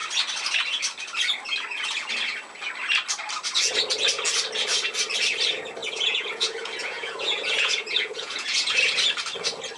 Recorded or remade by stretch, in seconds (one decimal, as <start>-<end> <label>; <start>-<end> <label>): 0.0-5.8 recorded; 5.8-8.8 remade; 8.8-9.8 recorded